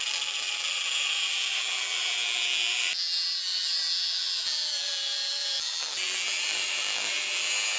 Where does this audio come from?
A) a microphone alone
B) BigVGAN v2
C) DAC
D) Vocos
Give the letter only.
B